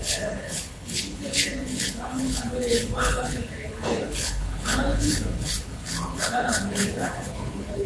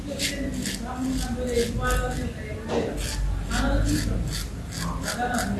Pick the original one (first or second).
second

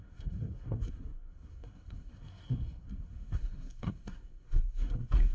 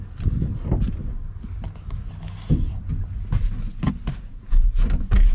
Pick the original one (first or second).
second